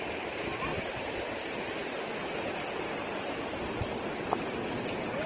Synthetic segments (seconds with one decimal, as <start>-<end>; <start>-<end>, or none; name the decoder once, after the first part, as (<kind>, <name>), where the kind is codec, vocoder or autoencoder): 0.7-3.9 (vocoder, BigVGAN v2)